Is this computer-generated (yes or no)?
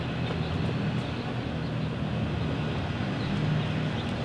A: no